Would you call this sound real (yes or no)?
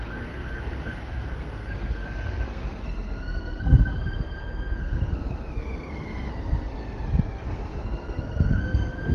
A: no